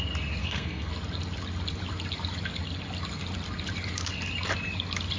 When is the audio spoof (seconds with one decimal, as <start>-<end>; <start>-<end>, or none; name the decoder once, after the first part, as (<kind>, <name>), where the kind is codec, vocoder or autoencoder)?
0.4-0.9 (codec, SNAC)